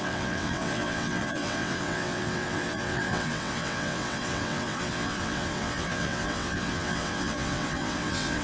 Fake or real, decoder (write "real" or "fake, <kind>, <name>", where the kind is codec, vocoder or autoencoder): fake, vocoder, WaveNeXt